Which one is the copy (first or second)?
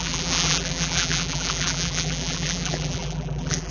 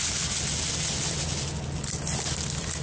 first